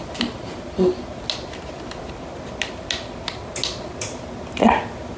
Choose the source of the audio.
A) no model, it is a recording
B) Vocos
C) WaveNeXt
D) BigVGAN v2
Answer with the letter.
A